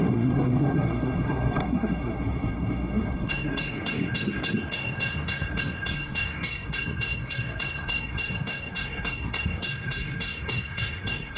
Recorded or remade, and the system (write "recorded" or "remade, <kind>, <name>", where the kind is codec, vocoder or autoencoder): remade, codec, SNAC